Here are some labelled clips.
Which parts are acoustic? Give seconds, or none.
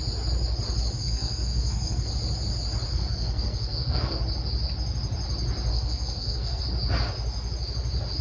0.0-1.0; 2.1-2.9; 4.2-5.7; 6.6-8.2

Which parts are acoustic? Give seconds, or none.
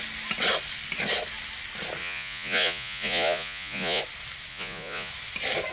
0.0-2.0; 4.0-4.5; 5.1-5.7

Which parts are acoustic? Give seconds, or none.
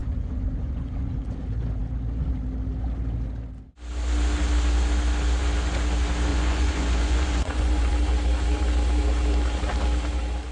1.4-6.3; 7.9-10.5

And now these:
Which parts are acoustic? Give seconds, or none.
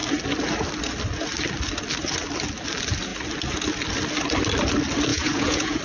0.0-5.1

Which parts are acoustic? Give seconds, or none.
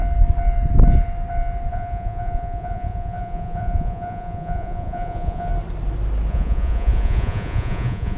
0.0-1.7; 5.5-6.3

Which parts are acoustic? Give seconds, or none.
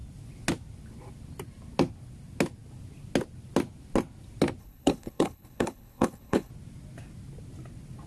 0.0-4.6; 6.5-8.1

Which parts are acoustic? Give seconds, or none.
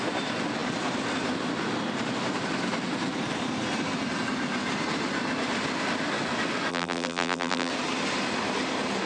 0.0-6.7; 7.7-9.1